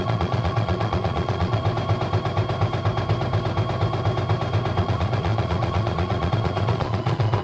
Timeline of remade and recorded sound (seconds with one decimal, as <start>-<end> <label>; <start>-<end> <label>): 0.0-1.6 remade; 1.6-4.8 recorded; 4.8-7.4 remade

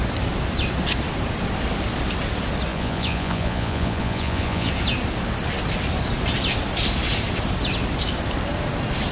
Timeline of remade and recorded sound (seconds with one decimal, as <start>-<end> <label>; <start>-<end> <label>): 0.0-2.7 recorded; 2.7-4.7 remade; 4.7-9.1 recorded

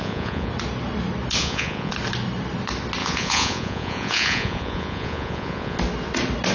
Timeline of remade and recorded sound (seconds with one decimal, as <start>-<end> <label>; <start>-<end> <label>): 0.0-0.5 remade; 0.5-1.4 recorded; 1.4-1.9 remade; 1.9-3.0 recorded; 3.0-5.8 remade; 5.8-6.5 recorded

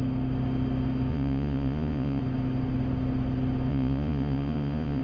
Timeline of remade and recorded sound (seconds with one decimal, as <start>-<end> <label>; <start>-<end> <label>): 0.0-1.1 recorded; 1.1-2.2 remade; 2.2-3.7 recorded; 3.7-5.0 remade

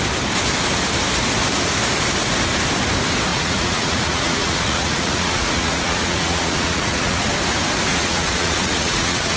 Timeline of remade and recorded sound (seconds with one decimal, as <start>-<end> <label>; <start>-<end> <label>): 0.0-3.3 recorded; 3.3-7.3 remade; 7.3-7.9 recorded; 7.9-9.4 remade

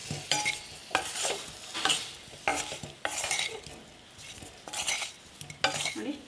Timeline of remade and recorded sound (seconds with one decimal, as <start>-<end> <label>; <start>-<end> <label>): 0.0-6.3 recorded